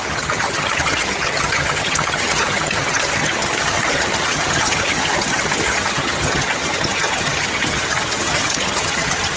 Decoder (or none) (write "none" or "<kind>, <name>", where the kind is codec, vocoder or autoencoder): vocoder, HiFi-GAN